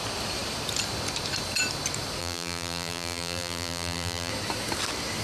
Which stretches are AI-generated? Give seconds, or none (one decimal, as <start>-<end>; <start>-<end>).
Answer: 2.2-4.3

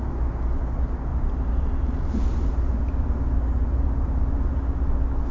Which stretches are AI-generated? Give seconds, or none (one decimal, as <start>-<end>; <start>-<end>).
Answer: 1.1-2.8; 3.6-4.5

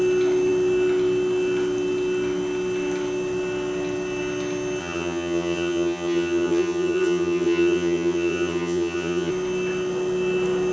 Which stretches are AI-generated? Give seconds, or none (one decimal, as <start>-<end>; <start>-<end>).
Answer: 4.8-9.3

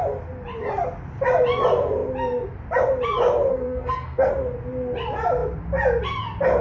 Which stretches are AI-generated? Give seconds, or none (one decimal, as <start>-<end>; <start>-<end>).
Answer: 3.5-4.3

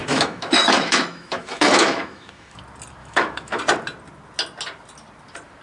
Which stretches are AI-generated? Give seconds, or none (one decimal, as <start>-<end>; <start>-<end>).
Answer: 0.0-2.6; 3.0-3.6